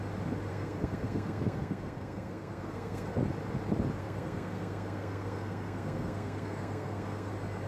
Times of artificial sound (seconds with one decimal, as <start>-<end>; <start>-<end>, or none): 0.5-3.1; 4.0-7.3

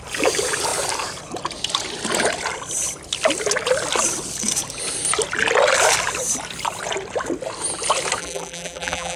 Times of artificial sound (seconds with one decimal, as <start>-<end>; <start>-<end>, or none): 8.2-9.2

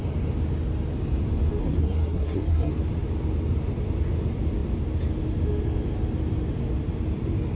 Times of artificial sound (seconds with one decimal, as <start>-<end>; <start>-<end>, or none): 1.6-2.7

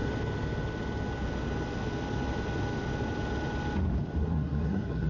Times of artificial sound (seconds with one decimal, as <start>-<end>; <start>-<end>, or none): 4.2-5.1

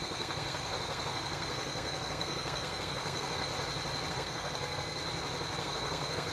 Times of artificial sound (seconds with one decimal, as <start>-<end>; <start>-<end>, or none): 0.0-3.5; 4.1-5.0; 5.6-6.3

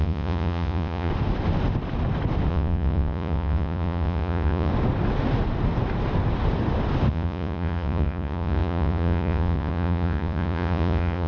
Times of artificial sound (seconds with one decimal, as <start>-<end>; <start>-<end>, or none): 0.0-1.1; 2.5-4.7; 7.1-11.3

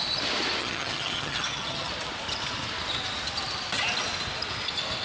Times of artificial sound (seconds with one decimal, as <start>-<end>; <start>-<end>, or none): 0.6-1.9